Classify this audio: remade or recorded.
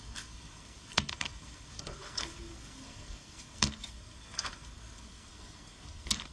remade